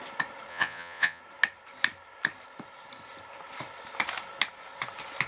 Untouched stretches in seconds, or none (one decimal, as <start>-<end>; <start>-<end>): 0.0-0.5; 1.2-5.3